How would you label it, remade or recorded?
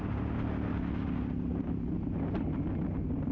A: recorded